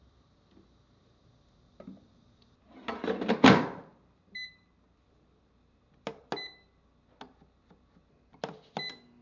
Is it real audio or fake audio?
real